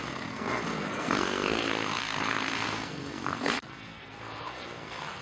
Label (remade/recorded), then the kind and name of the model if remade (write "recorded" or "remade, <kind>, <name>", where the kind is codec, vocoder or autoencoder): remade, codec, SNAC